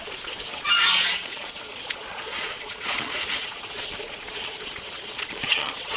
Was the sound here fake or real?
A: fake